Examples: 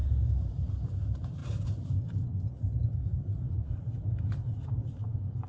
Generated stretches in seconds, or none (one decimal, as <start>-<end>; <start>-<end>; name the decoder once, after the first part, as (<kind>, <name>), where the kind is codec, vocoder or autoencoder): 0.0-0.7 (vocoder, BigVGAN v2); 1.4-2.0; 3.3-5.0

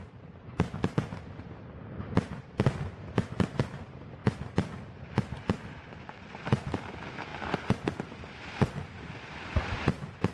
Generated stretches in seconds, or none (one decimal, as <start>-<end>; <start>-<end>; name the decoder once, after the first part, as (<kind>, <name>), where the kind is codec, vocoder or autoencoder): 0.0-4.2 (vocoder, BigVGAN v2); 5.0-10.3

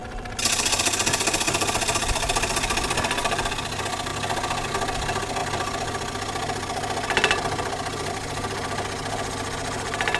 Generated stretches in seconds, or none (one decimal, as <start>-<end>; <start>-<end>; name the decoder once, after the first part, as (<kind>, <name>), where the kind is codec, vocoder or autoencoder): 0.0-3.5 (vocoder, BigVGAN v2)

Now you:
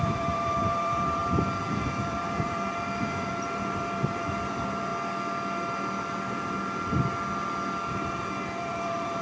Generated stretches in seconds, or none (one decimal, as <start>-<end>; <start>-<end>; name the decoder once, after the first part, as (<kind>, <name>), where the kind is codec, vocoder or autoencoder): 0.0-4.9 (vocoder, BigVGAN v2); 8.6-9.2